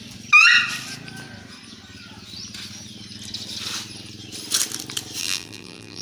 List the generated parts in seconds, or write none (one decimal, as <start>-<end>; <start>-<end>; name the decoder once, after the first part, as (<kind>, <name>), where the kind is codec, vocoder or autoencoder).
5.2-6.0 (vocoder, BigVGAN v2)